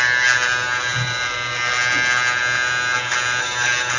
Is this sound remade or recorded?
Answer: recorded